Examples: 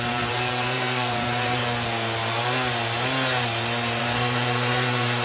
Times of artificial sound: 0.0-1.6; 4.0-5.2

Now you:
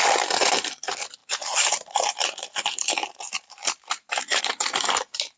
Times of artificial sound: 0.0-5.4

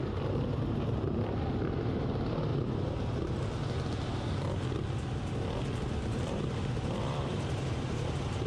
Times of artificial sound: 0.0-2.5; 6.0-8.5

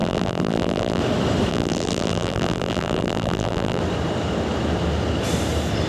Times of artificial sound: 0.0-1.0; 1.5-3.8

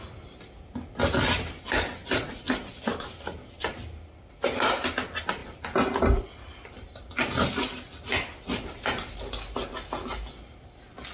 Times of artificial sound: 2.0-4.2; 5.4-6.2

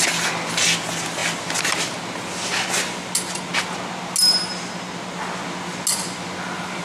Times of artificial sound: none